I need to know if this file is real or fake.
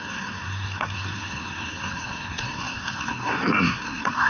fake